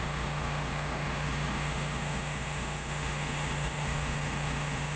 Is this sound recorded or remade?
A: remade